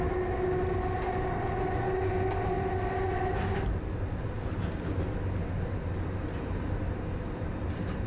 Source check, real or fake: real